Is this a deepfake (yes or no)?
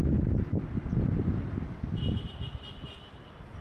no